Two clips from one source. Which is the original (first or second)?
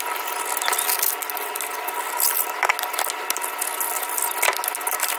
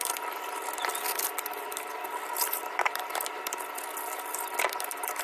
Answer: first